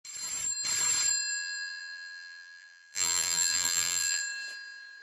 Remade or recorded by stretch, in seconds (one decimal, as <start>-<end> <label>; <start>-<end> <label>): 0.0-1.3 recorded; 1.3-4.2 remade; 4.2-5.0 recorded